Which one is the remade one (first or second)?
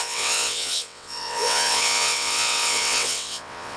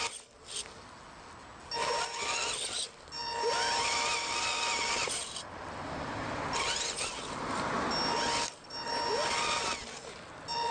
first